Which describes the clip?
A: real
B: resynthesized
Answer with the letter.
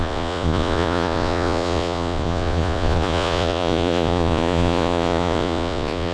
B